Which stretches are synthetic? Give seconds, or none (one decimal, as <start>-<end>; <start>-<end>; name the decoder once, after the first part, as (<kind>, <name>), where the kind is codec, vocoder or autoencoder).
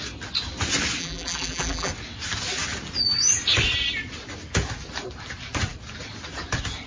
1.0-1.9 (vocoder, BigVGAN v2)